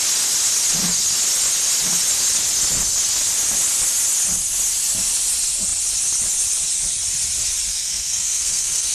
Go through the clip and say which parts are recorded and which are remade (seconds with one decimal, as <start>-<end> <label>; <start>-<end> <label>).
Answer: 0.0-7.7 recorded; 7.7-8.9 remade